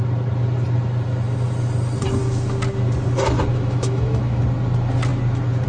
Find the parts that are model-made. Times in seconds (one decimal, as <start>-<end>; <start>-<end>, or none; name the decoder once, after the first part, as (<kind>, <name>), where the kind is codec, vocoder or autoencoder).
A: 3.5-4.4 (autoencoder, DAC-VAE)